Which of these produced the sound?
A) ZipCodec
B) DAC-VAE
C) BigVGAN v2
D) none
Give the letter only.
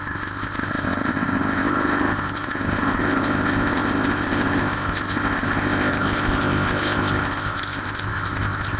A